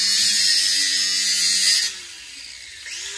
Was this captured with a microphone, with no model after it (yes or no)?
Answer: yes